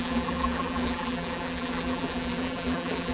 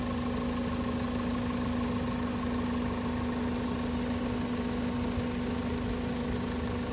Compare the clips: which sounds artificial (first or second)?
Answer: first